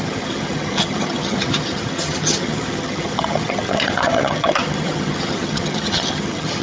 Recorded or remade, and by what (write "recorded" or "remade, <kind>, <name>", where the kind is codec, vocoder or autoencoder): remade, vocoder, HiFi-GAN